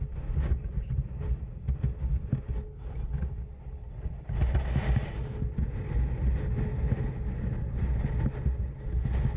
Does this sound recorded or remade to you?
recorded